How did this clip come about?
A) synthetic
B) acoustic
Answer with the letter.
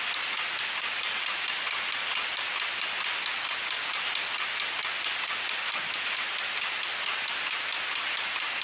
B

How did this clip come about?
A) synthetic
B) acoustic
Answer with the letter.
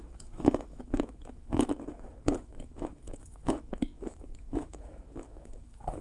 A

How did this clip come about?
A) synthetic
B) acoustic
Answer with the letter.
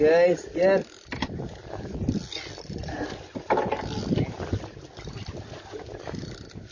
B